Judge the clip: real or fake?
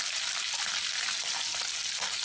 real